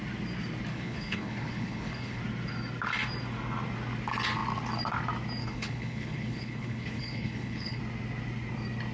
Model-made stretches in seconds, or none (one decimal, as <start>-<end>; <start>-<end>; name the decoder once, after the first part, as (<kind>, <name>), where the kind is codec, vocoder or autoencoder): 0.7-2.2 (codec, HILCodec); 5.4-7.8